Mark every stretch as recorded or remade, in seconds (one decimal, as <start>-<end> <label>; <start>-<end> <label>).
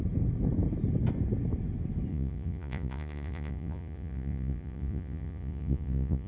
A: 0.0-2.1 recorded; 2.1-6.3 remade